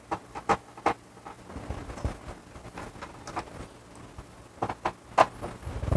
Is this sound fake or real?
real